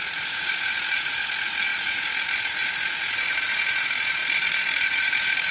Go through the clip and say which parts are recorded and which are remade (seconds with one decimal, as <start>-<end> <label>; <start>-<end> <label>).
0.0-5.5 remade